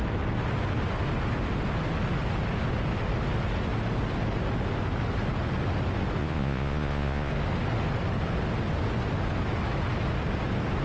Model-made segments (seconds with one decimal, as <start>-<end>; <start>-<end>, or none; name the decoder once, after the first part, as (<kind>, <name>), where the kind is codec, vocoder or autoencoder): 6.2-7.3 (vocoder, Vocos)